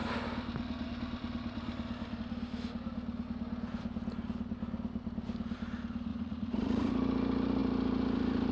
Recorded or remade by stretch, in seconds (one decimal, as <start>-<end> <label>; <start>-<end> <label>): 0.0-6.1 recorded; 6.1-6.9 remade; 6.9-8.5 recorded